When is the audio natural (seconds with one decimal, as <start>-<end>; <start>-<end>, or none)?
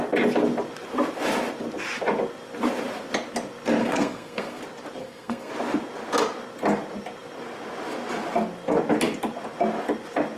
0.0-3.8; 4.6-5.0; 5.5-10.4